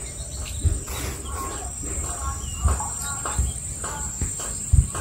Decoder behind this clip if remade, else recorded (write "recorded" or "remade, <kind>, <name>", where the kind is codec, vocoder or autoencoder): recorded